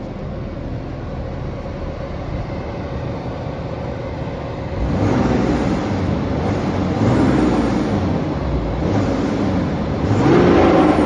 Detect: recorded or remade recorded